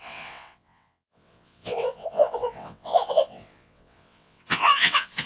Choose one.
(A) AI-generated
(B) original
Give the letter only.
A